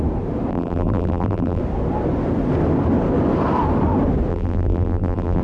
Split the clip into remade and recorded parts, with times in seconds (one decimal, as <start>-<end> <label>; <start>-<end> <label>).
0.0-0.5 recorded; 0.5-1.6 remade; 1.6-4.3 recorded; 4.3-5.4 remade